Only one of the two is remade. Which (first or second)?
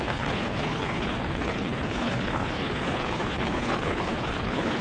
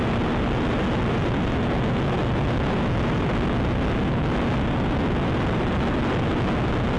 first